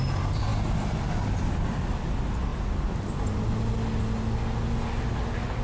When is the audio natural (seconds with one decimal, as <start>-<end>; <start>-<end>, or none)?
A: 0.0-5.6